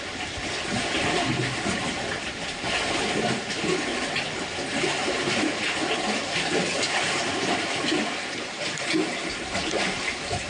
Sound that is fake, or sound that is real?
real